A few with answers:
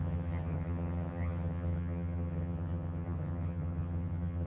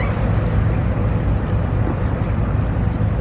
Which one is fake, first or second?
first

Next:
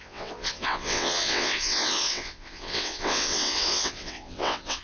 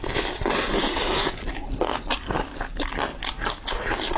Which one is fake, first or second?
first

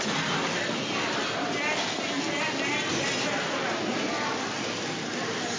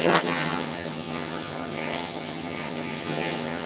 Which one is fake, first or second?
second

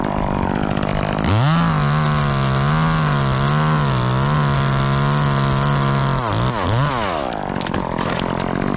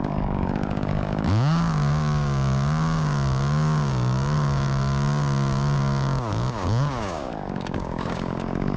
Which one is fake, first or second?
second